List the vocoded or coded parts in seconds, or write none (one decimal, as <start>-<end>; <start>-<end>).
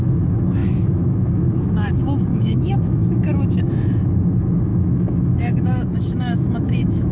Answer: 0.6-1.9; 2.3-3.6; 4.7-7.1